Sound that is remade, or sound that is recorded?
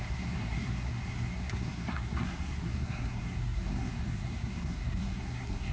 remade